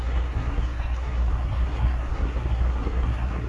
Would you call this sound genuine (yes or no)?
no